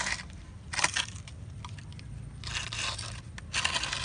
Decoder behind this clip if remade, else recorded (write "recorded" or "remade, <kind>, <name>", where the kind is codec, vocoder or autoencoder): recorded